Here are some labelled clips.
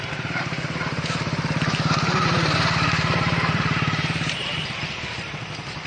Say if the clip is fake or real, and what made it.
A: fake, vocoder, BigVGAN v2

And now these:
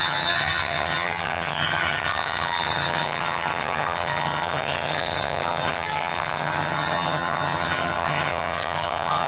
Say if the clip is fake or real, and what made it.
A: fake, vocoder, HiFi-GAN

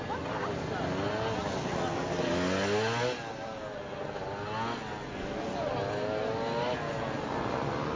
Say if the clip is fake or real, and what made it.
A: real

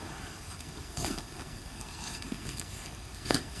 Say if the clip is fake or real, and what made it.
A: fake, codec, SNAC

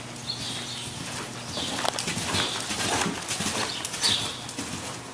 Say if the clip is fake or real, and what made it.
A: real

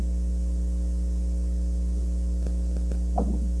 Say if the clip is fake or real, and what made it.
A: real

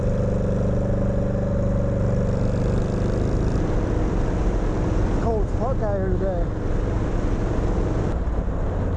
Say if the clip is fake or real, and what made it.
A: real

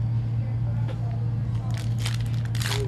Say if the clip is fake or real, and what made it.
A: real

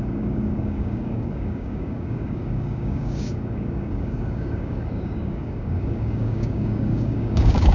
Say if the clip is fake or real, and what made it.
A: fake, codec, DAC